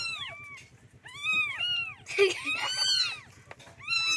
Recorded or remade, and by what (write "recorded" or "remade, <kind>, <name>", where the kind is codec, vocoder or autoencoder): recorded